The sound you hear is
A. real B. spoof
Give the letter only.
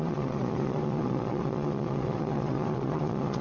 B